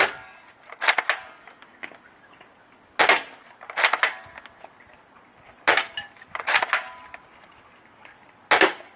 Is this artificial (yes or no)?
no